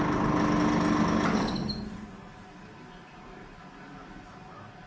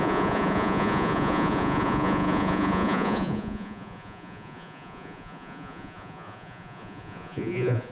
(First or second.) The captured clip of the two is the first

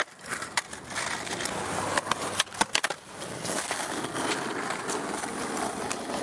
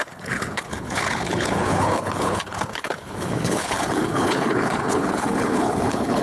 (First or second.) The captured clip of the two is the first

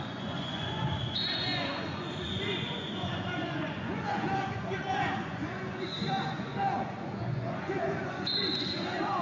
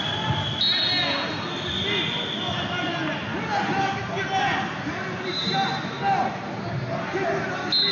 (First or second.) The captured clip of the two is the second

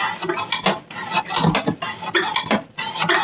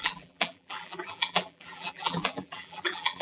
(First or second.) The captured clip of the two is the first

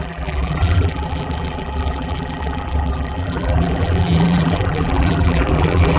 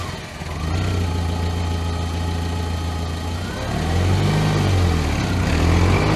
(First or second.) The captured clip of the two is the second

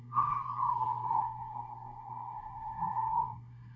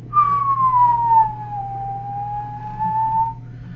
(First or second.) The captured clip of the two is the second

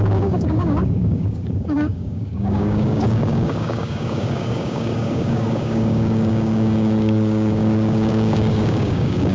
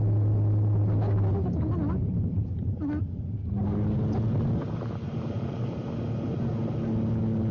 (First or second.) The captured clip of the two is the second